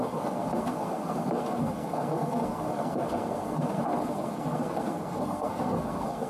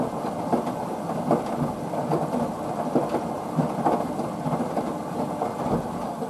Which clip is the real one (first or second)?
second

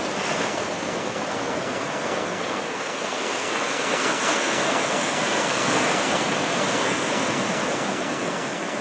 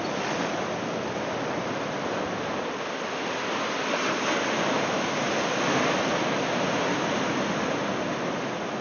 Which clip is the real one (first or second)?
second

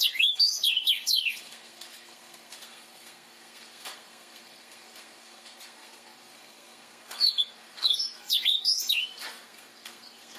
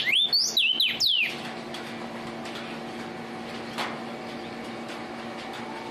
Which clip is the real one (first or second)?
second